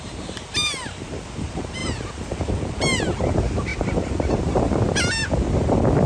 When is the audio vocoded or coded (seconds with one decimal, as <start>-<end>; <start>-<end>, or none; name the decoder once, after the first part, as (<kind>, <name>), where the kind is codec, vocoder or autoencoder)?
0.0-3.7 (vocoder, BigVGAN v2); 4.4-5.2